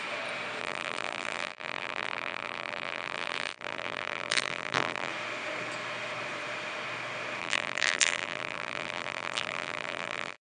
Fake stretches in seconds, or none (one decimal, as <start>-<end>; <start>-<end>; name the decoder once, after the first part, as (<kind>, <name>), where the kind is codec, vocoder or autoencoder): 0.6-5.1 (vocoder, BigVGAN v2); 7.4-10.4